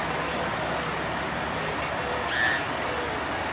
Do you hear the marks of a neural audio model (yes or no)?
no